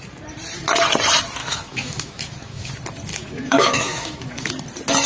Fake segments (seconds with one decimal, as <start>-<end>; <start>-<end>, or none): 1.4-2.7; 3.1-4.5